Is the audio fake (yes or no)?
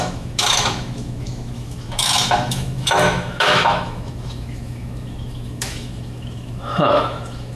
yes